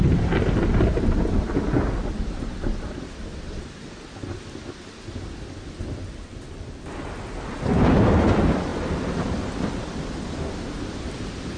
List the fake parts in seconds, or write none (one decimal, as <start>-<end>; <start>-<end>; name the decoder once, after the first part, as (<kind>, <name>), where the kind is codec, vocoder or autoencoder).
none